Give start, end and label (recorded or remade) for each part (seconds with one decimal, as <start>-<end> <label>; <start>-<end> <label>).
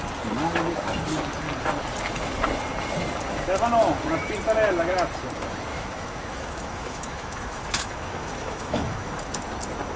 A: 0.0-5.7 recorded; 5.7-9.2 remade; 9.2-10.0 recorded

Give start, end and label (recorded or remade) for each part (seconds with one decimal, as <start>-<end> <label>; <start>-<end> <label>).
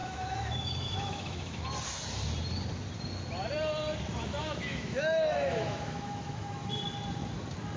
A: 0.0-1.6 remade; 1.6-4.4 recorded; 4.4-6.7 remade; 6.7-7.8 recorded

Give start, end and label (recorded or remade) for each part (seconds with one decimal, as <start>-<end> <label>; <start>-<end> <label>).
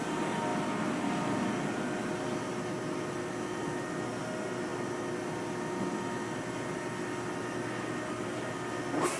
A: 0.0-9.2 recorded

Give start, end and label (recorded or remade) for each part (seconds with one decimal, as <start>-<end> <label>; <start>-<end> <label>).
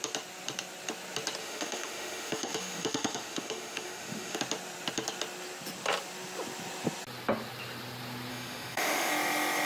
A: 0.0-1.4 recorded; 1.4-4.4 remade; 4.4-8.3 recorded; 8.3-9.1 remade; 9.1-9.6 recorded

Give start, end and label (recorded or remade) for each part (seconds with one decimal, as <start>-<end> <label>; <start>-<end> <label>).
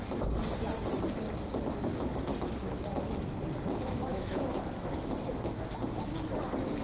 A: 0.0-2.3 recorded; 2.3-2.9 remade; 2.9-4.1 recorded; 4.1-5.3 remade; 5.3-6.8 recorded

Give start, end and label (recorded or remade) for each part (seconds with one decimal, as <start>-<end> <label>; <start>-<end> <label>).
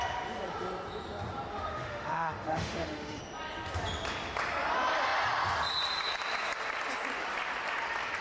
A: 0.0-1.5 recorded; 1.5-3.2 remade; 3.2-8.2 recorded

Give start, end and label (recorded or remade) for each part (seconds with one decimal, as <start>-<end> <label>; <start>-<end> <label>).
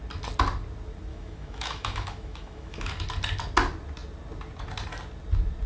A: 0.0-1.1 recorded; 1.1-2.9 remade; 2.9-5.7 recorded